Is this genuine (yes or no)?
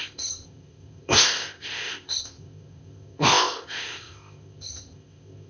no